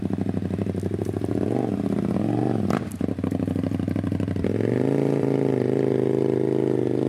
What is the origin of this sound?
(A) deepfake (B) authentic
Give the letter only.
B